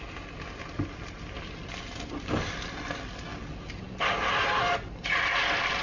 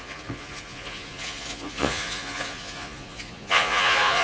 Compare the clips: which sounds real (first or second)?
first